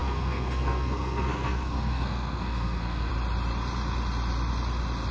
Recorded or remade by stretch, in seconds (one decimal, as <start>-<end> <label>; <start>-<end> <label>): 0.0-3.1 remade; 3.1-5.1 recorded